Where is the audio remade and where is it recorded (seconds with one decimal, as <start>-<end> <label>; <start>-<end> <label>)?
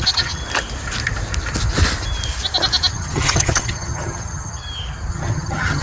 0.0-0.4 remade; 0.4-2.9 recorded; 2.9-4.6 remade; 4.6-5.1 recorded; 5.1-5.8 remade